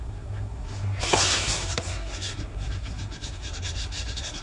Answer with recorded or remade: remade